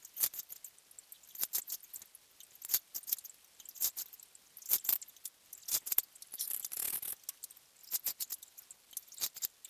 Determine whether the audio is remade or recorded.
recorded